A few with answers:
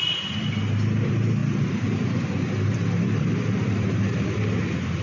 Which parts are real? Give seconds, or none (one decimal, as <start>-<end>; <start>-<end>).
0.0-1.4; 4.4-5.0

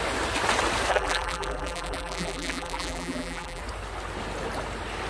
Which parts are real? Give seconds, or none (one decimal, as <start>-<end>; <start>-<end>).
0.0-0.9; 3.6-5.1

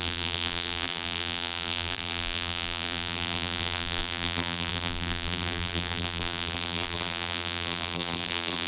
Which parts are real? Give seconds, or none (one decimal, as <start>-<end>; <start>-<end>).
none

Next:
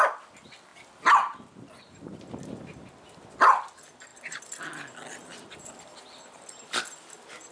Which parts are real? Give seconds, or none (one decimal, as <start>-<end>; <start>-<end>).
0.0-4.1; 4.7-5.2; 5.7-7.5

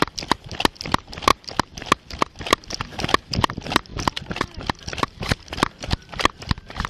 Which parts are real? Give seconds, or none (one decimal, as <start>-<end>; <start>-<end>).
0.0-3.9; 5.1-6.9